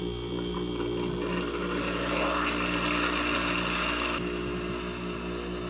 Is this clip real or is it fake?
real